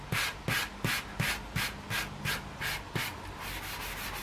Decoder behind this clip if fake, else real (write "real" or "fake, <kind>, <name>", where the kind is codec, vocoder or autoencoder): real